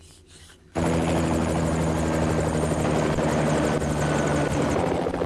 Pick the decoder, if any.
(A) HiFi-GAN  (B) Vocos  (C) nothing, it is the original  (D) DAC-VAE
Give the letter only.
C